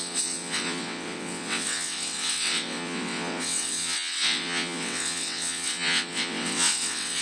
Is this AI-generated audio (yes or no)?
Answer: yes